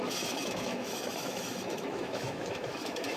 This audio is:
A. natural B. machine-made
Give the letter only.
B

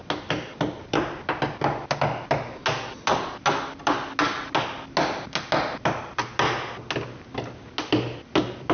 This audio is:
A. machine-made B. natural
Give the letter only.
B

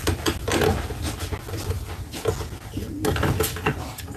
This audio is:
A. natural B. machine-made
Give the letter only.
A